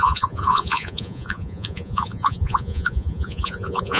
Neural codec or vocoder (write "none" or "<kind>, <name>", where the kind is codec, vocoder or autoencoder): vocoder, Vocos